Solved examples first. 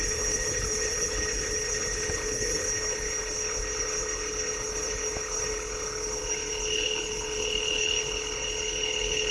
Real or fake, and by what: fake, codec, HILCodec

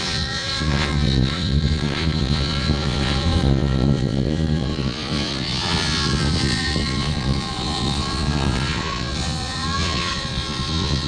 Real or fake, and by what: fake, vocoder, Vocos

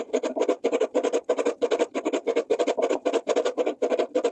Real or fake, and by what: real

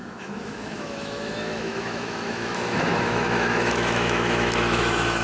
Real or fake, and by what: fake, autoencoder, DAC-VAE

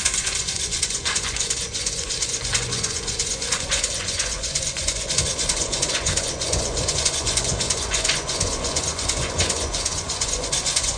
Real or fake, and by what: fake, vocoder, Vocos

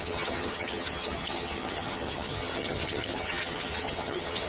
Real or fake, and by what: fake, vocoder, HiFi-GAN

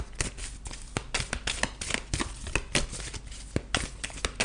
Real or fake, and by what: real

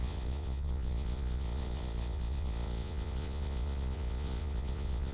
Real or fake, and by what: fake, vocoder, Vocos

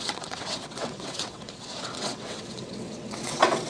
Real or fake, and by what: fake, vocoder, WaveNeXt